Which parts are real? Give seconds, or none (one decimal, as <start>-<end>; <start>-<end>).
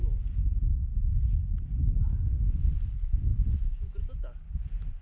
0.0-5.0